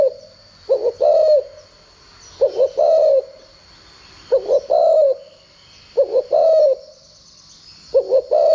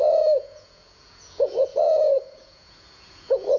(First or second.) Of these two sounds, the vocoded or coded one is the second